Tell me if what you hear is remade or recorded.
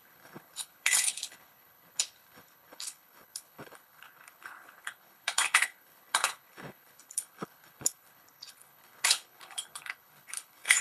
remade